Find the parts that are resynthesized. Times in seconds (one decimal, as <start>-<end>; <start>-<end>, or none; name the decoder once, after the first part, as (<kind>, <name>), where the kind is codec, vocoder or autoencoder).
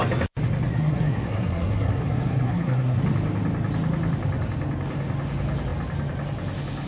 0.7-3.0 (codec, SNAC)